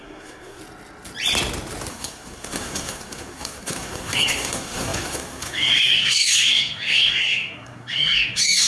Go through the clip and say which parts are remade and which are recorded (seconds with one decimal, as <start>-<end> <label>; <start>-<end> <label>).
0.0-0.6 remade; 0.6-1.9 recorded; 1.9-8.7 remade